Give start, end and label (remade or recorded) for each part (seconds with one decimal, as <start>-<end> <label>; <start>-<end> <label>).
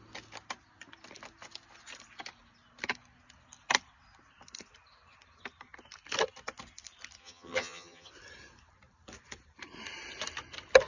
0.0-7.2 recorded; 7.2-8.1 remade; 8.1-10.9 recorded